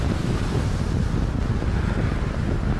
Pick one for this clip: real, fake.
real